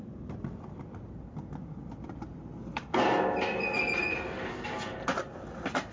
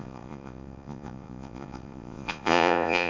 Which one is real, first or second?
first